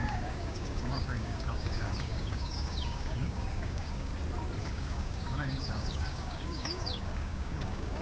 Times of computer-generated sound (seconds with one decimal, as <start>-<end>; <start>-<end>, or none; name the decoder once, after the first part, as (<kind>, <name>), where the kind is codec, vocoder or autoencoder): 0.0-4.1 (codec, DAC); 4.6-8.0